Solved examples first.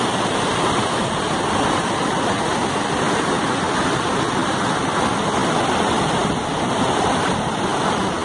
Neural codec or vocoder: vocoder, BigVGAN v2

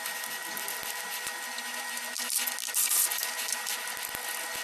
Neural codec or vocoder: none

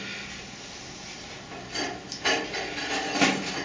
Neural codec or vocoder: none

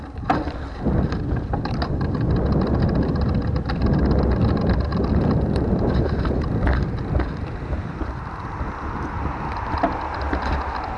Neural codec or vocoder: none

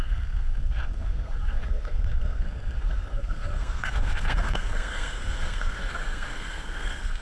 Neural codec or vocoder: codec, SNAC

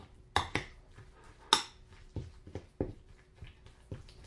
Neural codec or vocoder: none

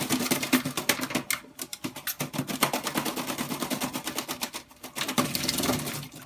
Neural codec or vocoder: none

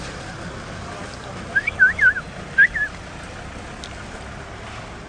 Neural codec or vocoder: none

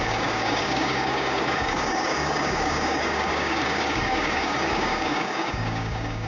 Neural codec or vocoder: codec, DAC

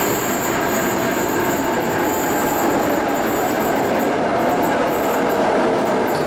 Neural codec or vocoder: none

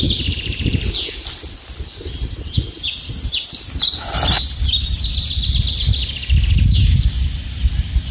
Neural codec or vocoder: none